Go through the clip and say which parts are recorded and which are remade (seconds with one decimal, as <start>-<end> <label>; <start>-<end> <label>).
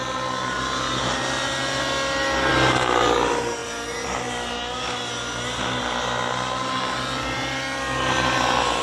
0.0-8.8 recorded